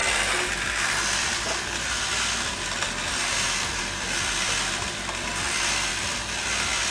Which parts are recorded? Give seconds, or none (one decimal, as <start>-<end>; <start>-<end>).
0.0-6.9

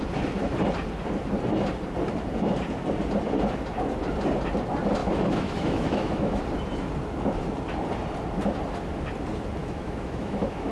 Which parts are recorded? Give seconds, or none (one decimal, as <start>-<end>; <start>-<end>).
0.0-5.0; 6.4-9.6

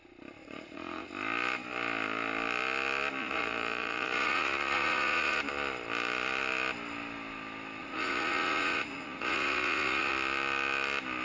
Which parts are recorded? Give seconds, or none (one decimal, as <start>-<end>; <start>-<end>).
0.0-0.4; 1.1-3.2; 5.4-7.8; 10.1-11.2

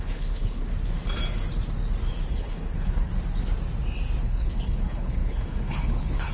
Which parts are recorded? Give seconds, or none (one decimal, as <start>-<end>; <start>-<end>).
0.6-2.3; 3.1-4.2

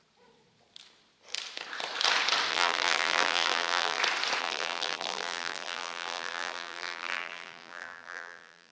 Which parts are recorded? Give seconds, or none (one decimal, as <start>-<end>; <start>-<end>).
0.0-2.5; 4.0-4.4